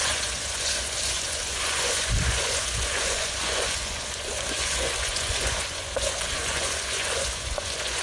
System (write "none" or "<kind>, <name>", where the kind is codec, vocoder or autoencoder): vocoder, Vocos